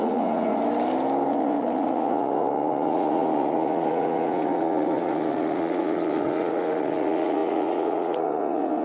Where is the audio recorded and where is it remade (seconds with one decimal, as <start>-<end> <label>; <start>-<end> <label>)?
0.0-0.5 remade; 0.5-1.3 recorded; 1.3-8.8 remade

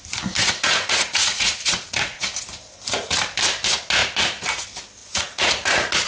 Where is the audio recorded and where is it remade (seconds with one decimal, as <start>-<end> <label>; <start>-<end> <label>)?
0.0-0.4 recorded; 0.4-2.4 remade; 2.4-4.0 recorded; 4.0-4.6 remade; 4.6-5.0 recorded; 5.0-6.1 remade

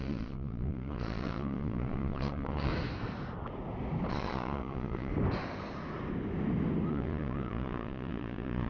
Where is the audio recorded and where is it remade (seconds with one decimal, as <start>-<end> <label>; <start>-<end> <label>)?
0.0-2.7 remade; 2.7-4.1 recorded; 4.1-5.1 remade; 5.1-6.9 recorded; 6.9-8.7 remade

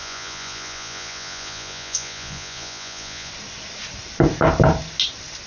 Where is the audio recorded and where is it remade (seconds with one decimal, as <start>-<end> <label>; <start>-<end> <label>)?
0.0-3.3 remade; 3.3-5.5 recorded